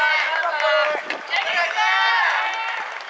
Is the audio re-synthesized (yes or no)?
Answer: no